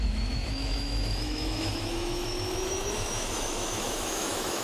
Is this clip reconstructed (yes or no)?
yes